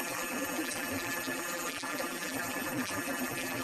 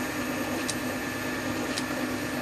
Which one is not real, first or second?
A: first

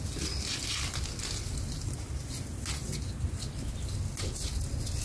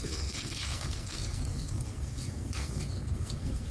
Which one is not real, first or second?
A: second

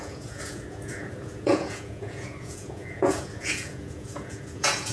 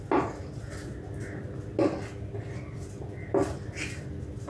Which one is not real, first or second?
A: first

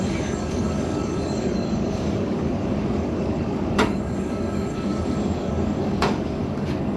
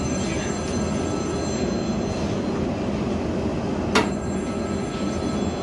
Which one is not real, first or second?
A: first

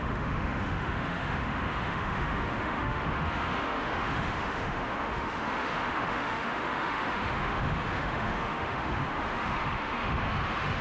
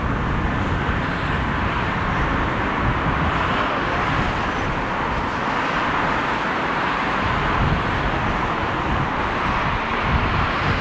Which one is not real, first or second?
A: first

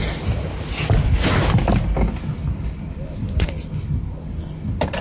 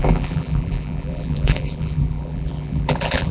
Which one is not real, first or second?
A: second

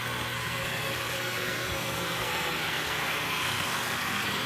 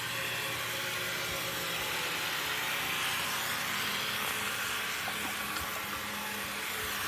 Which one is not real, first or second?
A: first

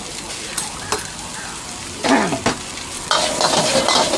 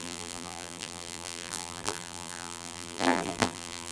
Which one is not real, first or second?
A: second